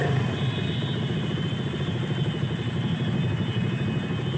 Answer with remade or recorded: recorded